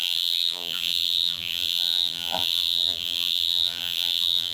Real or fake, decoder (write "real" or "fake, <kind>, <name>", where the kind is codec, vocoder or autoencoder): fake, vocoder, BigVGAN v2